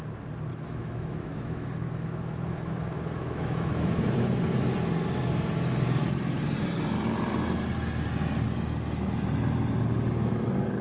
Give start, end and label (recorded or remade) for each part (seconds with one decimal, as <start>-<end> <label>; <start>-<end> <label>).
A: 0.0-0.5 recorded; 0.5-4.4 remade; 4.4-10.8 recorded